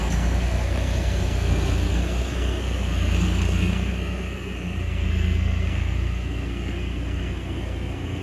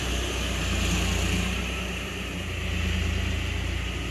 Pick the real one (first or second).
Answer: second